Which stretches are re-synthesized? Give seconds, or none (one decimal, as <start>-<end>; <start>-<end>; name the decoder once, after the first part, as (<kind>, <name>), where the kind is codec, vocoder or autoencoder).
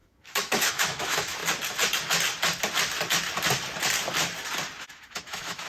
0.0-1.4 (autoencoder, DAC-VAE); 4.8-5.7